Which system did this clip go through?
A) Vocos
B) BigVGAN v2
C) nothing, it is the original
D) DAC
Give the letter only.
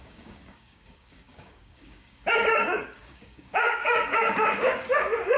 D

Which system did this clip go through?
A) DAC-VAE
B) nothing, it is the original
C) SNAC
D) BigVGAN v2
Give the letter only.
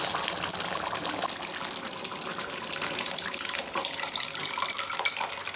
B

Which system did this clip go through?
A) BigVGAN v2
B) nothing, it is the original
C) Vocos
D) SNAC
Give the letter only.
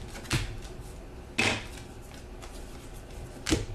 B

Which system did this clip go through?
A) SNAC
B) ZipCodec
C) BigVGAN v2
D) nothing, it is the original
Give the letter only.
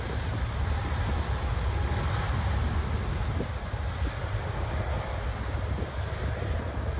D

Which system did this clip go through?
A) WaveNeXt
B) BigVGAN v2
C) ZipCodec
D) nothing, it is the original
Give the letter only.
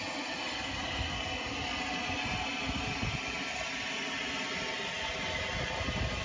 D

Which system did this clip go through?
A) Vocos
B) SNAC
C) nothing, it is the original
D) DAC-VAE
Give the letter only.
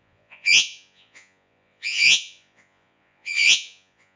A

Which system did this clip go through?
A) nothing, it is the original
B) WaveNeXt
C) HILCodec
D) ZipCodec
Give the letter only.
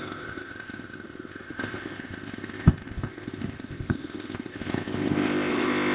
D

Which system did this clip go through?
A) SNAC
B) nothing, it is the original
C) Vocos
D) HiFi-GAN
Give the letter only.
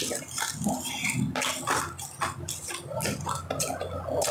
B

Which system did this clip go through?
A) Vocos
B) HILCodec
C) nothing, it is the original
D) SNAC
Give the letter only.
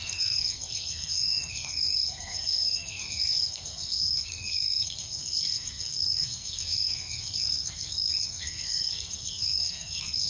D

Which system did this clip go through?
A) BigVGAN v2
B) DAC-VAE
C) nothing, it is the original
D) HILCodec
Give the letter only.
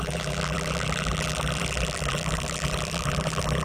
A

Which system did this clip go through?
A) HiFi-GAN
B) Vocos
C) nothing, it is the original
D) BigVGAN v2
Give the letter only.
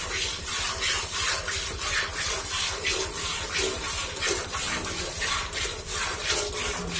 C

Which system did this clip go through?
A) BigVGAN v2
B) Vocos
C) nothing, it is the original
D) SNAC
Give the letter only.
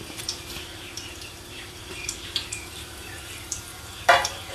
A